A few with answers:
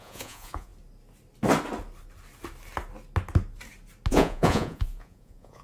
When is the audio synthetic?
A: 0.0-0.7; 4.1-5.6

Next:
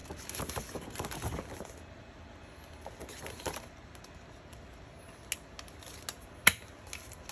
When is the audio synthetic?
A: none

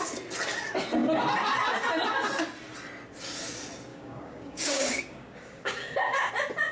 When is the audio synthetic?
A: 3.9-6.3

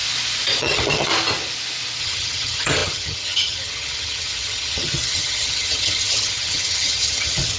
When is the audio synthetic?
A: 0.6-1.1; 2.0-7.6

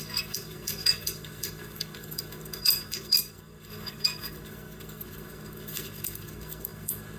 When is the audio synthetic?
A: 0.0-7.2

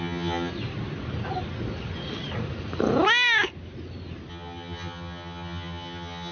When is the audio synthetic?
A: 0.0-0.5; 4.3-6.3